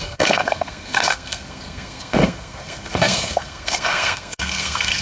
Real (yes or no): no